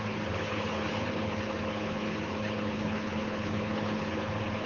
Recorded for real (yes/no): no